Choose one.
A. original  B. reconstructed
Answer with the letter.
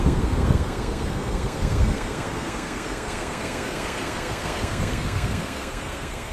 B